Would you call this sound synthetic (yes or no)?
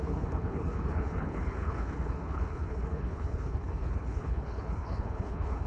yes